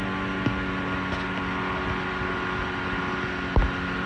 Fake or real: real